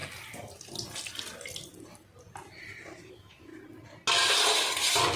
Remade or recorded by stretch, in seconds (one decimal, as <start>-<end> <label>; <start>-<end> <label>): 0.0-3.1 recorded; 3.1-3.5 remade; 3.5-5.2 recorded